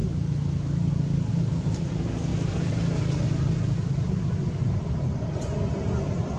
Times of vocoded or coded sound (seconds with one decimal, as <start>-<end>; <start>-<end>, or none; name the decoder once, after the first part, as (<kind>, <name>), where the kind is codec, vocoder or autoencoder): 0.0-0.9 (autoencoder, DAC-VAE); 1.3-1.9